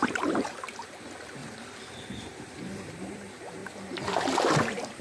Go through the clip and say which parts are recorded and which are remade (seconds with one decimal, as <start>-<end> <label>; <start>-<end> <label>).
0.0-1.4 remade; 1.4-2.2 recorded; 2.2-3.6 remade; 3.6-5.0 recorded